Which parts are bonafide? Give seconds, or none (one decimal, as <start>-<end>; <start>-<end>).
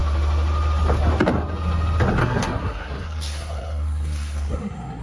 0.0-2.2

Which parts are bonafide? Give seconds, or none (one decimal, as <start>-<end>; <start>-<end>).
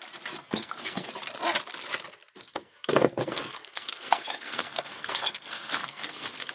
0.0-0.4; 1.1-2.5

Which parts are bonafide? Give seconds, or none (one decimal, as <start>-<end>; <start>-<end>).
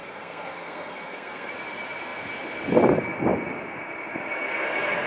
1.5-5.1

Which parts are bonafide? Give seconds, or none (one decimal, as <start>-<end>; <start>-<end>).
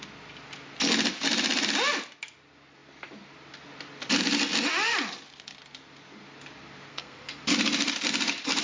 0.0-6.9; 7.4-8.6